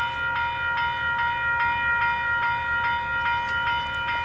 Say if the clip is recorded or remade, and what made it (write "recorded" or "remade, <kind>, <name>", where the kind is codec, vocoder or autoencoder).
recorded